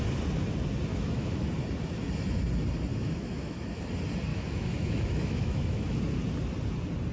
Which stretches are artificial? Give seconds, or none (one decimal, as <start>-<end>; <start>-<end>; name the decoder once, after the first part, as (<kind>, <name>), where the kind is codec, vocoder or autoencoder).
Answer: 0.9-1.5 (autoencoder, DAC-VAE); 2.9-3.8; 4.3-6.0

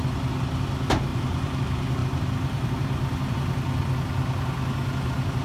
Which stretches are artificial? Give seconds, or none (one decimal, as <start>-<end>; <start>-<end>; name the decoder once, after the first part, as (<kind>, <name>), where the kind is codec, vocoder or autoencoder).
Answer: 1.1-1.6 (vocoder, BigVGAN v2); 2.0-3.3

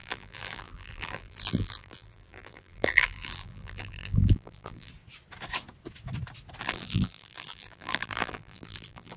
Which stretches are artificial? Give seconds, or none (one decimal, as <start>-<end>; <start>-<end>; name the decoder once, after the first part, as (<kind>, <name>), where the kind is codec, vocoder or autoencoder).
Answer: 0.0-4.9 (vocoder, BigVGAN v2); 6.6-9.2

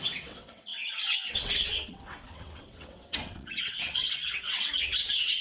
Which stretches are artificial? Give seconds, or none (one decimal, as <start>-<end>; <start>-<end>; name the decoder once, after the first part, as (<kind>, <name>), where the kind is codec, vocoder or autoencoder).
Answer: 0.0-5.4 (vocoder, WaveNeXt)

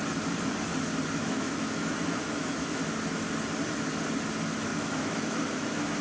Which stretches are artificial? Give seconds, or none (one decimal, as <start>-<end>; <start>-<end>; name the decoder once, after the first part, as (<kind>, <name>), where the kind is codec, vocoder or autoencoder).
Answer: 1.2-2.8 (autoencoder, DAC-VAE); 4.7-6.0

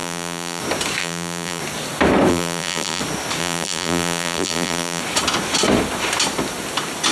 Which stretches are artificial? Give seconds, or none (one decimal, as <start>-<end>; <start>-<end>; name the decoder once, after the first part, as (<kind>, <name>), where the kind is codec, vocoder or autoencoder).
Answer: 0.0-0.6 (vocoder, BigVGAN v2); 1.0-1.6; 2.3-3.0; 3.4-5.0

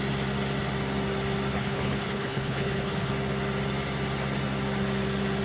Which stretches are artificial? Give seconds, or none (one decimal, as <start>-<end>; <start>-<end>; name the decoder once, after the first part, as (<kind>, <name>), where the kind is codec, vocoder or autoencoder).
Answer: 1.5-3.1 (codec, HILCodec)

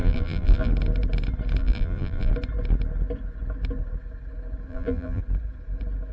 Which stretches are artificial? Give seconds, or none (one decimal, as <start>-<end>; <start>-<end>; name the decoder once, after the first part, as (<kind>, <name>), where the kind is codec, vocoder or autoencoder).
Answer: 0.0-0.7 (vocoder, BigVGAN v2); 1.6-2.3; 4.7-5.2